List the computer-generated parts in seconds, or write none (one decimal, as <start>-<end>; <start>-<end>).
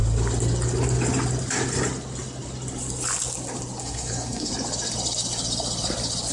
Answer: 3.8-4.5